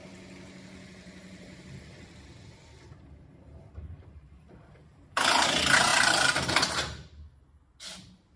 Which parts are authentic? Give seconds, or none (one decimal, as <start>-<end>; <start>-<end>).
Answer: 0.0-8.4